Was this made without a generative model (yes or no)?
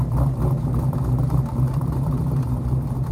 no